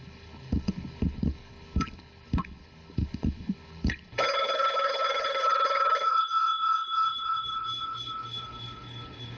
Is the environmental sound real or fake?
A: fake